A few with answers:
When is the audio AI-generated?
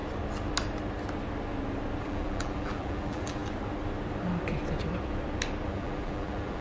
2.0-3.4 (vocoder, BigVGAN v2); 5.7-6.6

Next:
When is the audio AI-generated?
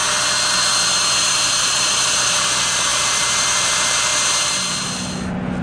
1.2-4.1 (vocoder, BigVGAN v2)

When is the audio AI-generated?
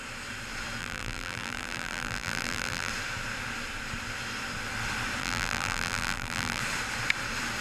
0.8-2.9 (vocoder, BigVGAN v2); 5.2-6.6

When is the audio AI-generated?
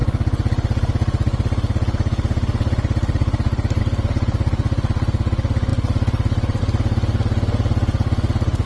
5.7-6.6 (vocoder, BigVGAN v2)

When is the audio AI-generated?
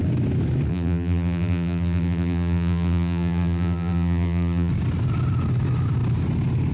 0.7-4.7 (vocoder, BigVGAN v2)